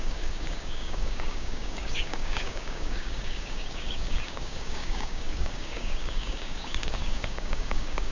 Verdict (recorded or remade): remade